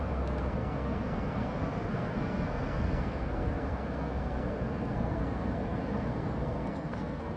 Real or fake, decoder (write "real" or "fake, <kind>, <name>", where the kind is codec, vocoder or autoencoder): fake, codec, SNAC